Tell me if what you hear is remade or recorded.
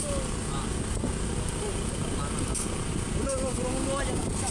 recorded